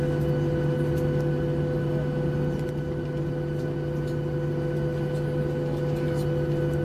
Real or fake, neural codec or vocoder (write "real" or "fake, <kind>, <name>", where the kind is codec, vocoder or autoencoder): real